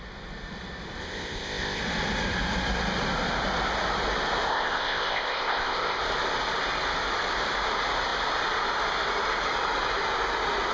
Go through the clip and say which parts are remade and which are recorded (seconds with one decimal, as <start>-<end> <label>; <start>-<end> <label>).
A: 0.0-1.0 recorded; 1.0-1.8 remade; 1.8-4.5 recorded; 4.5-6.0 remade; 6.0-10.7 recorded